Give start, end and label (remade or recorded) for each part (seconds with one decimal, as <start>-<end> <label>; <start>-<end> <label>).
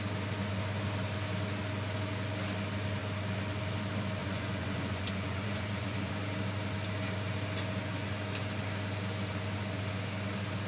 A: 0.0-4.2 recorded; 4.2-6.1 remade; 6.1-10.7 recorded